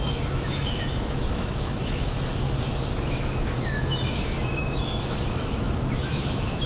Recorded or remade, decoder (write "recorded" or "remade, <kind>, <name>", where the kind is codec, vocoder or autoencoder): remade, autoencoder, DAC-VAE